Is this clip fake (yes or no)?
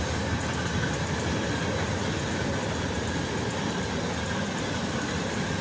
no